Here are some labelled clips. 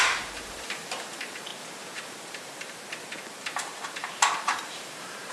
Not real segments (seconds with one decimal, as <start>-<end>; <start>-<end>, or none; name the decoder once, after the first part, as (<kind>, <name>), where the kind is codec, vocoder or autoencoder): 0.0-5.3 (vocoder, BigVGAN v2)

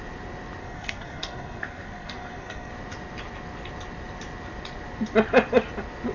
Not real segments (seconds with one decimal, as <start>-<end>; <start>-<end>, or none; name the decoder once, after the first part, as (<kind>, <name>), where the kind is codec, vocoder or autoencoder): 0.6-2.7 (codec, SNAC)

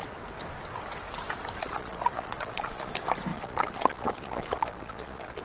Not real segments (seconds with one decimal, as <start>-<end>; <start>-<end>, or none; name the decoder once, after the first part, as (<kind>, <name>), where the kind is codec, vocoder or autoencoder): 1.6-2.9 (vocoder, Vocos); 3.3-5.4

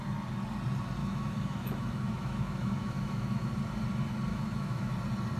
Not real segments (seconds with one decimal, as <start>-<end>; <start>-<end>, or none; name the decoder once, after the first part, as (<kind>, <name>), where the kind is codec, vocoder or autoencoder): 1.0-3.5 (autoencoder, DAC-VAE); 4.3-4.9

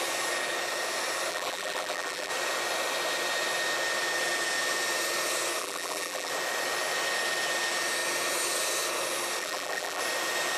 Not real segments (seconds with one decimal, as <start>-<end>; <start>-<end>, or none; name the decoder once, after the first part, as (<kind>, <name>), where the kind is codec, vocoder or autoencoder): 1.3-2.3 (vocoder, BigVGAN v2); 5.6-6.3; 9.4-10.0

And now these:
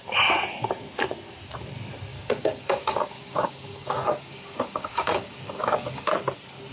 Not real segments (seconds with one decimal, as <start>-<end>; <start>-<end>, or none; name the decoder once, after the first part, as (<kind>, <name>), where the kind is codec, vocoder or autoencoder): 2.1-6.1 (codec, DAC)

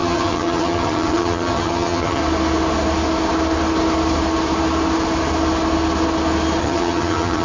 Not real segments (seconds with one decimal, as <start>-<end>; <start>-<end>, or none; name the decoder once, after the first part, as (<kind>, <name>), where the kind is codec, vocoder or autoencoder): 0.0-2.2 (vocoder, HiFi-GAN); 6.6-7.4

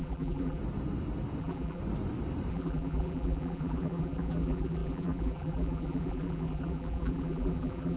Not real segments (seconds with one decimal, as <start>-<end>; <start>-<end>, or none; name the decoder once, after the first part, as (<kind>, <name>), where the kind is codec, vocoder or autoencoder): 0.0-0.6 (vocoder, BigVGAN v2); 1.4-1.8; 2.5-8.0